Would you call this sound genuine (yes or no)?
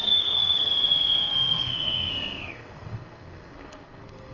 no